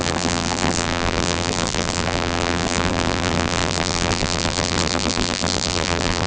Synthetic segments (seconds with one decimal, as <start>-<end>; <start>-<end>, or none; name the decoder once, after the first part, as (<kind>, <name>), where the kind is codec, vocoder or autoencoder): 0.0-6.3 (vocoder, BigVGAN v2)